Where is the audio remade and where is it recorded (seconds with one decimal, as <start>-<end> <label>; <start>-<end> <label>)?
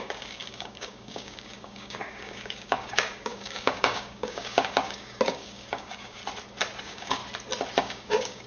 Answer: 0.0-6.2 remade; 6.2-6.8 recorded; 6.8-7.2 remade; 7.2-7.8 recorded; 7.8-8.5 remade